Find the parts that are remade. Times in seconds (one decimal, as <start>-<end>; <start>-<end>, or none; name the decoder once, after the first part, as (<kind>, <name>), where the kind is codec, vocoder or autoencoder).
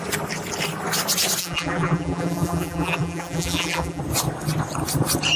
1.4-4.0 (vocoder, BigVGAN v2)